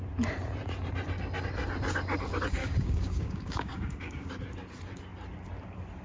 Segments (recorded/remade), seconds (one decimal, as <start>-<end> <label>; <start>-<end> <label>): 0.0-2.6 recorded; 2.6-4.3 remade; 4.3-6.0 recorded